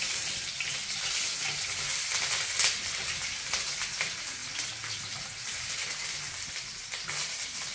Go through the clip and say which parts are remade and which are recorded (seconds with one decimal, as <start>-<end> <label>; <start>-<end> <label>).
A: 0.0-0.8 remade; 0.8-2.7 recorded; 2.7-4.4 remade; 4.4-4.9 recorded; 4.9-5.9 remade; 5.9-7.2 recorded; 7.2-7.7 remade